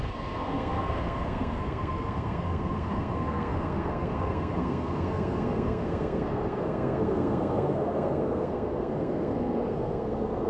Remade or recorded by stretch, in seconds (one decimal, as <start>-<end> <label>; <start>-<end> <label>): 0.0-10.5 remade